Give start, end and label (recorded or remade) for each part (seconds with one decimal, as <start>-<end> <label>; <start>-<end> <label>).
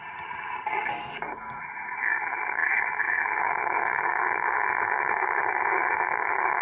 0.0-0.9 remade; 0.9-1.6 recorded; 1.6-6.6 remade